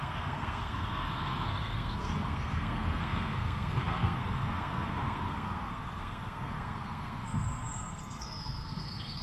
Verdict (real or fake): fake